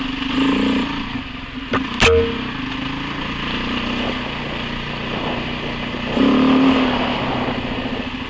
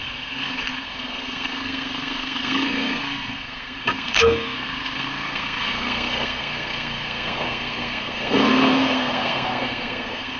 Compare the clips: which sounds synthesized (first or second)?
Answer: second